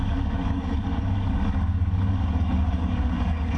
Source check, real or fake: fake